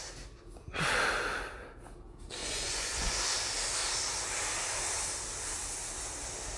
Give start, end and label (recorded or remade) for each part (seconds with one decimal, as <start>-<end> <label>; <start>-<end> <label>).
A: 0.0-2.4 recorded; 2.4-3.2 remade; 3.2-6.6 recorded